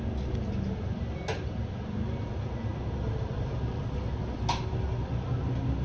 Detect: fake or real real